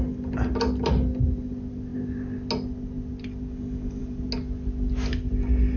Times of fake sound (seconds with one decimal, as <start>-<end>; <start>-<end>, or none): none